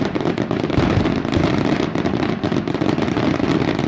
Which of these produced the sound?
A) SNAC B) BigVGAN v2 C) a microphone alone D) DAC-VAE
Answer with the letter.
B